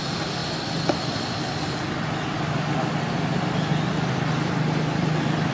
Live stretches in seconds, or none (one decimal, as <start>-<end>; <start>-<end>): 0.0-5.5